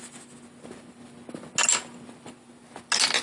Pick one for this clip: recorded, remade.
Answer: recorded